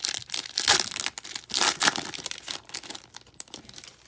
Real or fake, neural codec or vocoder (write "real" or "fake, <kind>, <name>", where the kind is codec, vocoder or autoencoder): real